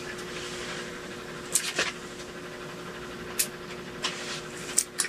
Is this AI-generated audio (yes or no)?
no